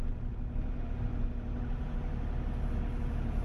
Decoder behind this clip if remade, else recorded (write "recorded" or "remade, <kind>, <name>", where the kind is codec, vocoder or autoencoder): recorded